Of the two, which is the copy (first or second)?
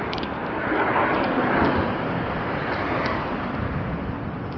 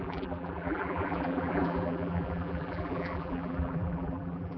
second